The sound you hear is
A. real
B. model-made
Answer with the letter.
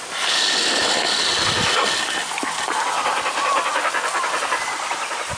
A